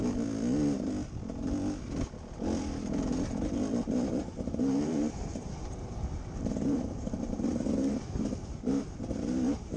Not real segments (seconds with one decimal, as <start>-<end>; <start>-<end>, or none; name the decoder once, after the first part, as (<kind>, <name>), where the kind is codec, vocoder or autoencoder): 4.2-9.8 (vocoder, BigVGAN v2)